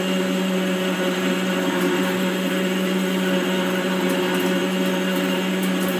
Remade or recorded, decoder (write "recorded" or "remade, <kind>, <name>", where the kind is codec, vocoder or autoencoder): recorded